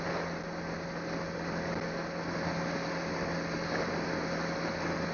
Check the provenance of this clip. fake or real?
real